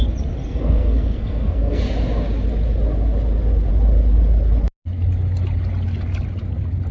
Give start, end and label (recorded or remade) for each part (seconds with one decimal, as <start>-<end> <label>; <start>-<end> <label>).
0.0-0.4 recorded; 0.4-1.8 remade; 1.8-6.9 recorded